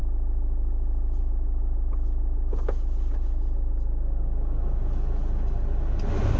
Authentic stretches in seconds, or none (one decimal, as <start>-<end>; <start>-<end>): 0.0-6.4